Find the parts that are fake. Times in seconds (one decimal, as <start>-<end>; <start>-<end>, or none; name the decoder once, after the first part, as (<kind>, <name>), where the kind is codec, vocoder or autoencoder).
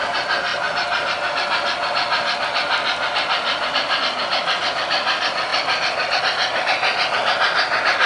none